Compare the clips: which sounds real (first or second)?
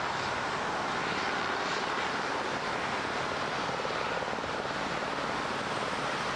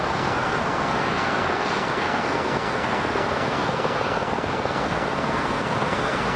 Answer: first